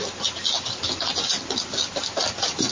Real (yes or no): yes